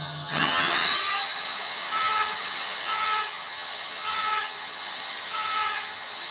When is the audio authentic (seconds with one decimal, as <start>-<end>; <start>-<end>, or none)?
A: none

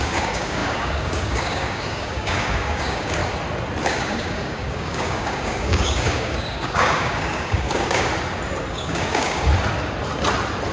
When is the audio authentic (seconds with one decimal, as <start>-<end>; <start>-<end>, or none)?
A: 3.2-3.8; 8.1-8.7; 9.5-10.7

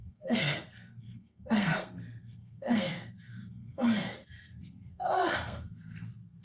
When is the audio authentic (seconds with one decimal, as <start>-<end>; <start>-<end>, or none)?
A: none